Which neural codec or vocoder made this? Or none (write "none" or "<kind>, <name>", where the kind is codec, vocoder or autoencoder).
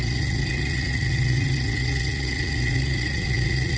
vocoder, Vocos